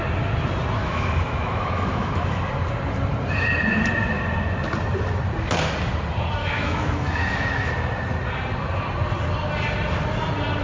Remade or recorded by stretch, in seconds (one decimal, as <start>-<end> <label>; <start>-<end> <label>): 0.0-0.8 recorded; 0.8-2.4 remade; 2.4-6.4 recorded; 6.4-7.7 remade; 7.7-10.6 recorded